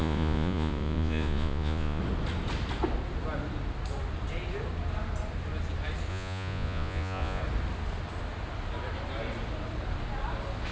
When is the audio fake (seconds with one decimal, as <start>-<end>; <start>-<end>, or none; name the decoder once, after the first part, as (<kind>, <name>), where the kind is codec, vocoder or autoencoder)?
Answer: 0.0-2.0 (vocoder, Vocos); 6.1-7.4